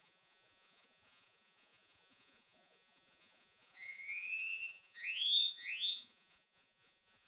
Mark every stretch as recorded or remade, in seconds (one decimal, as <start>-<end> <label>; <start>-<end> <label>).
0.0-7.3 remade